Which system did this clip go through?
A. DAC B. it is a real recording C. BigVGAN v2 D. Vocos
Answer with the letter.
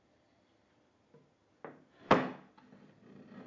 B